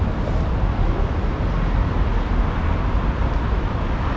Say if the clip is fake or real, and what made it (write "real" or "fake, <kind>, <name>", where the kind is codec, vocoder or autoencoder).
real